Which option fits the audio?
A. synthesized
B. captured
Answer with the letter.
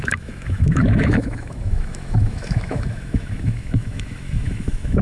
A